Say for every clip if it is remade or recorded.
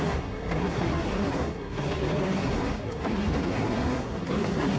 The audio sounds remade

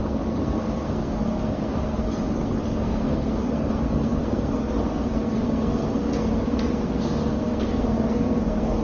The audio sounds remade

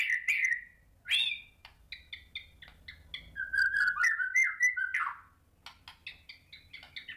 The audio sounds recorded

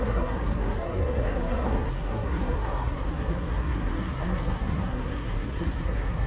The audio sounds remade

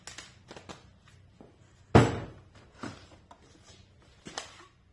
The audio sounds recorded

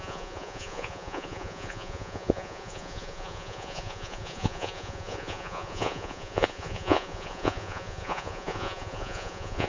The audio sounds remade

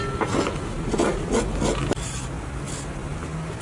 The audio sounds recorded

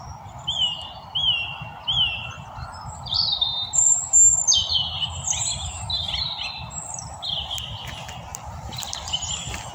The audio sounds recorded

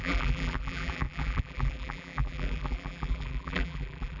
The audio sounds remade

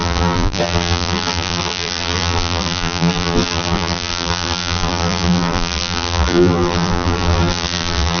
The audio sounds remade